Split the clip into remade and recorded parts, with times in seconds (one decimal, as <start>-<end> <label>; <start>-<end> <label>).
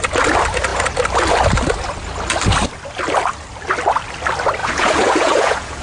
0.0-4.6 recorded; 4.6-5.8 remade